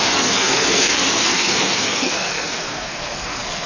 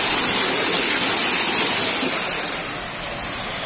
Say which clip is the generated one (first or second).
first